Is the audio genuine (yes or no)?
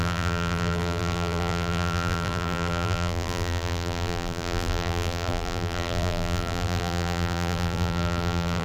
no